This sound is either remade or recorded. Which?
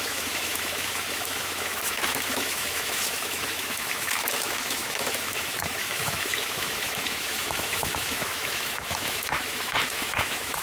remade